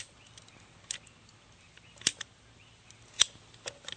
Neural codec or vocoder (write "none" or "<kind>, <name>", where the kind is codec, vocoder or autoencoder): none